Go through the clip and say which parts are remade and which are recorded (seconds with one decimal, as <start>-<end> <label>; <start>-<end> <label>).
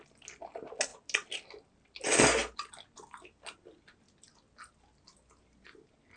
0.0-6.2 recorded